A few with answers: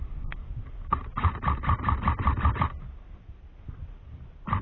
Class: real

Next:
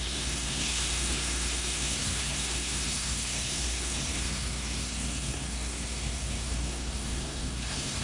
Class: fake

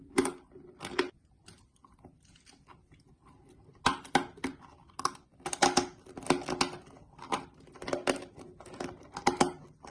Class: real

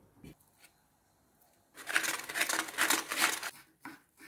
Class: real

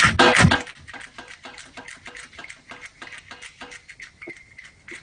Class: real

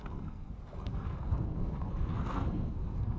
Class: fake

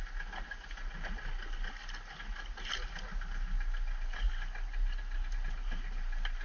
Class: real